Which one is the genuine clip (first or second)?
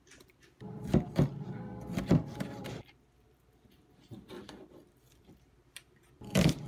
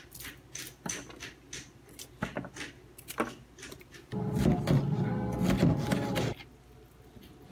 second